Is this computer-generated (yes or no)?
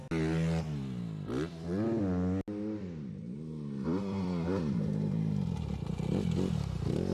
no